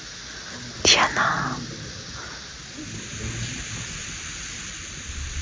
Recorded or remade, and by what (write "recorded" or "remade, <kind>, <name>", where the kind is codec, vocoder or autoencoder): recorded